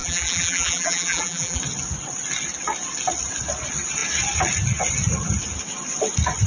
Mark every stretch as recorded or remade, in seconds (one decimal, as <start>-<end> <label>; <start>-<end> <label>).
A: 0.0-1.6 remade; 1.6-6.5 recorded